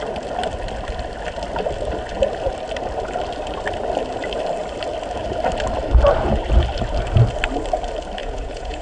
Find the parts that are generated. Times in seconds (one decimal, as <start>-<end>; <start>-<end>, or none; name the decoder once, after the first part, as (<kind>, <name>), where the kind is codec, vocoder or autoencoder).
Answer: 8.2-8.8 (vocoder, Vocos)